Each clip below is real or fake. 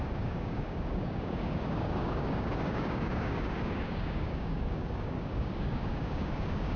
fake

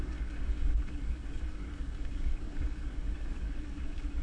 fake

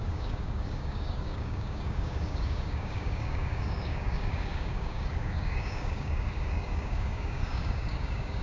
fake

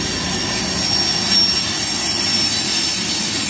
real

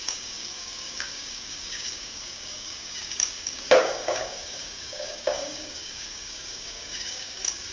fake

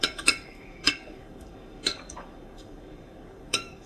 fake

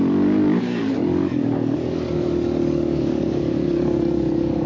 fake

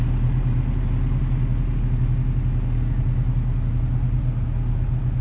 real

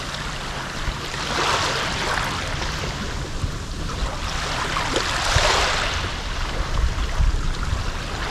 real